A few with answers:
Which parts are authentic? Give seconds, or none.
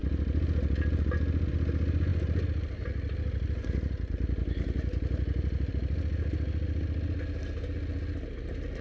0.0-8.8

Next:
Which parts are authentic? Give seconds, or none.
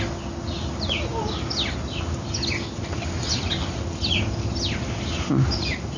0.0-6.0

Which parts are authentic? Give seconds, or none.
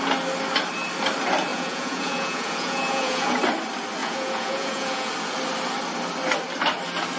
0.0-1.5; 3.4-4.0; 5.1-7.2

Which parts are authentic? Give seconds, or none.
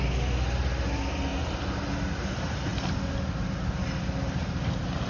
0.0-5.1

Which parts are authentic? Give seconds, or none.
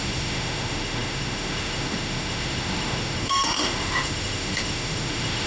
none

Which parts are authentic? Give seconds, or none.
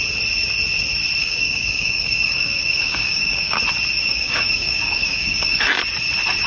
0.0-1.2; 3.6-4.0; 5.6-6.5